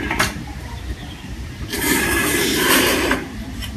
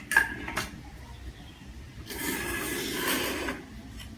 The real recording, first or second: second